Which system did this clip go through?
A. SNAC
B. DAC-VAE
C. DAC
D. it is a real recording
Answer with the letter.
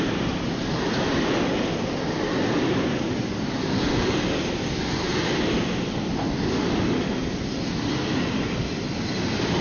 D